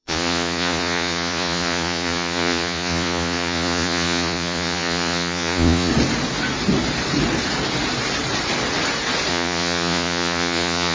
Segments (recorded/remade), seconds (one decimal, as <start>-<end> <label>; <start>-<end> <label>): 0.0-5.9 remade; 5.9-9.3 recorded; 9.3-10.9 remade